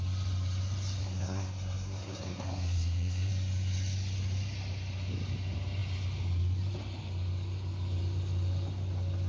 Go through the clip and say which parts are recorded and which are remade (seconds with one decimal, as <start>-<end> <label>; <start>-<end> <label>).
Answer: 0.0-1.0 recorded; 1.0-3.3 remade; 3.3-9.3 recorded